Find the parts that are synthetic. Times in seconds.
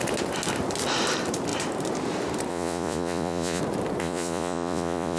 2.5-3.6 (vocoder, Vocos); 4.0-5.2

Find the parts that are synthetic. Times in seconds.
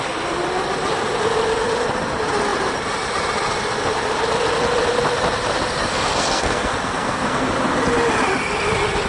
5.8-7.5 (codec, SNAC)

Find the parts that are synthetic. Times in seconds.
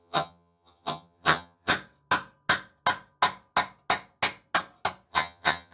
0.0-1.7 (vocoder, HiFi-GAN); 5.1-5.7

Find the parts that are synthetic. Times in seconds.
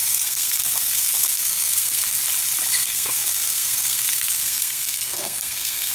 0.0-2.2 (codec, SNAC); 2.7-5.9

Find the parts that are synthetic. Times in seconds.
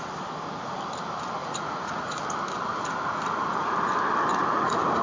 1.4-2.2 (vocoder, Vocos); 2.7-3.9; 4.4-5.0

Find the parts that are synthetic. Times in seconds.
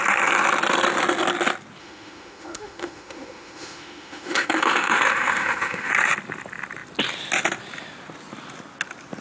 1.8-5.9 (autoencoder, DAC-VAE)